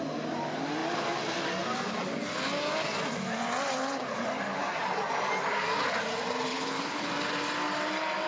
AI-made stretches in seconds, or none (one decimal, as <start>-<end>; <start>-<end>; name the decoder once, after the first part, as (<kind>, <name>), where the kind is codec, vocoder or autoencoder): 6.5-7.1 (codec, HILCodec)